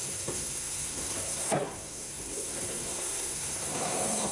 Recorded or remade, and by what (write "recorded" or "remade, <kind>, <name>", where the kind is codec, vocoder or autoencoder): remade, codec, SNAC